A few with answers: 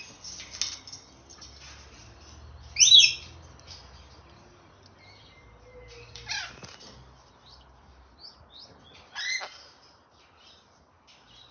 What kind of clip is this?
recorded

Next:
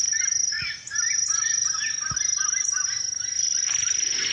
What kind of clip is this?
recorded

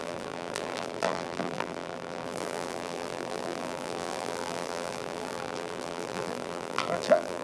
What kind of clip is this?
remade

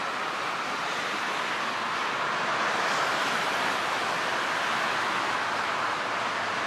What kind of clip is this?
recorded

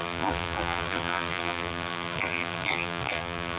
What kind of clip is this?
remade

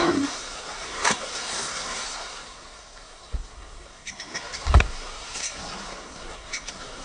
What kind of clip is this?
remade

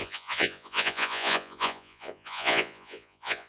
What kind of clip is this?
remade